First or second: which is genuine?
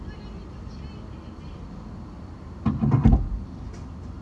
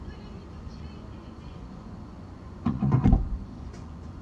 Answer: first